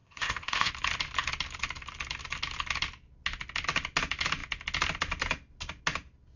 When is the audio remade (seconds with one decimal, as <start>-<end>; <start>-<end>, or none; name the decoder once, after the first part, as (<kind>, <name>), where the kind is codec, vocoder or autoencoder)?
0.0-0.7 (codec, ZipCodec)